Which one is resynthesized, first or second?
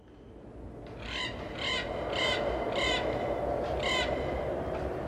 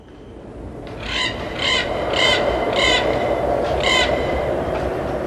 second